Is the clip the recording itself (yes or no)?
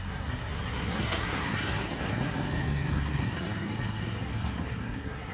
no